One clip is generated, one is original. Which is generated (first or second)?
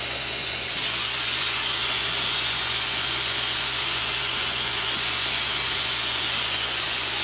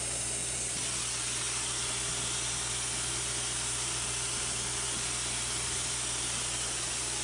first